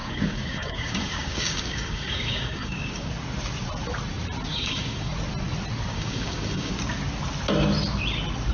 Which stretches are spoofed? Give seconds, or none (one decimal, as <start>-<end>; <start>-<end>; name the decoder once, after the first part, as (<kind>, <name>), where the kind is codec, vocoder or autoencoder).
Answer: 0.0-3.1 (codec, DAC); 4.5-5.1; 5.9-6.7